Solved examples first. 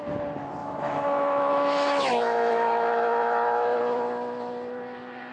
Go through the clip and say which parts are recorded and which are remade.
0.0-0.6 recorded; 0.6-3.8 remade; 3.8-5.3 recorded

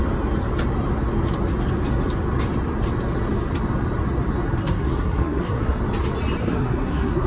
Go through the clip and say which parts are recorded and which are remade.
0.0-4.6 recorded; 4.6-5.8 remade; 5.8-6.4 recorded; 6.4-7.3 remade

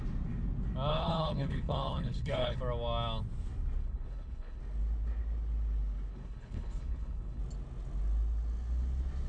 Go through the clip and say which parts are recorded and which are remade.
0.0-0.9 recorded; 0.9-2.6 remade; 2.6-3.8 recorded; 3.8-4.6 remade; 4.6-6.1 recorded; 6.1-7.4 remade; 7.4-9.3 recorded

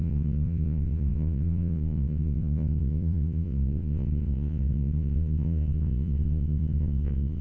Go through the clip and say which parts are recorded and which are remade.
0.0-7.4 remade

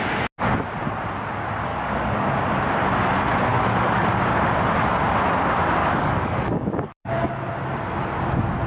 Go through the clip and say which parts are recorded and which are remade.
0.0-1.7 recorded; 1.7-2.3 remade; 2.3-3.5 recorded; 3.5-4.1 remade; 4.1-5.8 recorded; 5.8-7.4 remade; 7.4-8.7 recorded

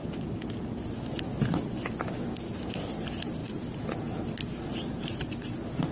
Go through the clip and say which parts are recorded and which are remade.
0.0-5.9 recorded

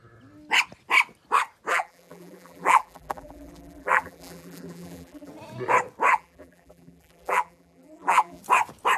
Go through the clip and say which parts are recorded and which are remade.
0.0-1.7 recorded; 1.7-5.3 remade; 5.3-6.1 recorded; 6.1-8.4 remade; 8.4-9.0 recorded